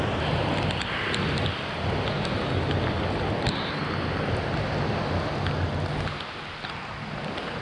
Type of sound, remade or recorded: recorded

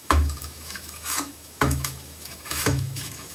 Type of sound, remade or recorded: remade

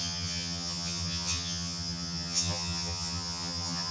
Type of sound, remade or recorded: remade